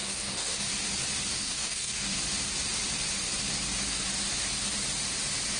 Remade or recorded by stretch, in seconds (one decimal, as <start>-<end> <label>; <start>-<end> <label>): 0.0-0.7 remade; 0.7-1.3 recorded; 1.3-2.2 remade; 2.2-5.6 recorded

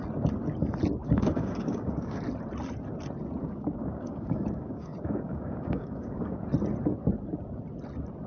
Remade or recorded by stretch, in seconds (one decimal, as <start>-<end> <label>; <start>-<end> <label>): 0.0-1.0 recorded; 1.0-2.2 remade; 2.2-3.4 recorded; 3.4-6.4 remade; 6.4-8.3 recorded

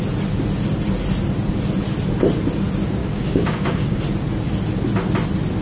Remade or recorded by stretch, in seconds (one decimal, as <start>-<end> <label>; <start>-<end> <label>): 0.0-3.0 recorded; 3.0-4.0 remade; 4.0-5.6 recorded

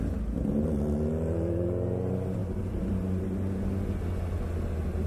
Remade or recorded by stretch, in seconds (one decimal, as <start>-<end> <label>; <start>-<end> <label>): 0.0-5.1 recorded

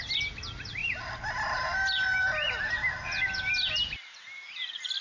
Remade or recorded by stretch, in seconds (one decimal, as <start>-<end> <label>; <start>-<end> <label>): 0.0-5.0 recorded

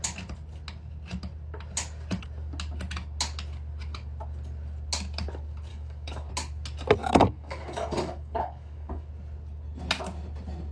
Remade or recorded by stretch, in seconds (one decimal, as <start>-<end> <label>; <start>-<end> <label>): 0.0-5.7 recorded; 5.7-6.3 remade; 6.3-7.0 recorded; 7.0-9.1 remade; 9.1-10.7 recorded

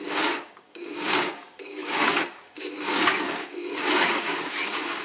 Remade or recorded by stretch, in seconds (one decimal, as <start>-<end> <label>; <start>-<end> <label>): 0.0-5.0 remade